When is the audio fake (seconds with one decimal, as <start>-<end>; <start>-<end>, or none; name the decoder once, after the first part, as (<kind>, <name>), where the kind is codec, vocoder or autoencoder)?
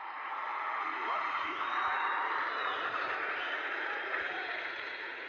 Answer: 0.0-5.3 (vocoder, Vocos)